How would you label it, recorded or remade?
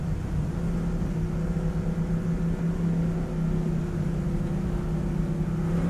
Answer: recorded